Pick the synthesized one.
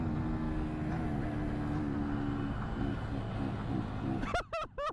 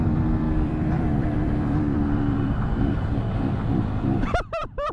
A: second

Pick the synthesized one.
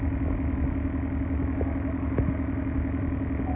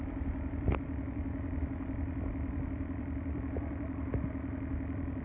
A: second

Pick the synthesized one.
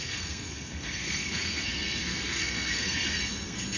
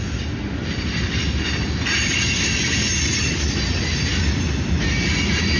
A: first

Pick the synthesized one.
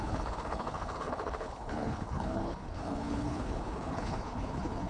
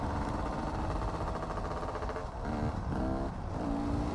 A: first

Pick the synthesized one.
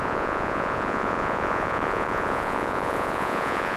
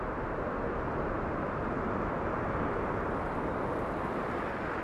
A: first